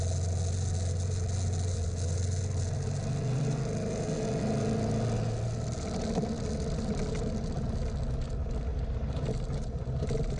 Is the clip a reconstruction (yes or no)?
no